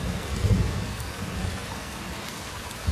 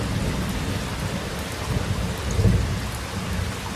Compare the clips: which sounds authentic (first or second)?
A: second